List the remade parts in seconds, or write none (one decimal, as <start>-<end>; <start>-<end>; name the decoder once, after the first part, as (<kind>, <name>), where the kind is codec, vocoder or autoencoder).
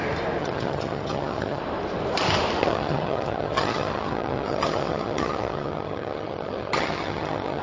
0.4-1.6 (vocoder, HiFi-GAN); 2.6-7.6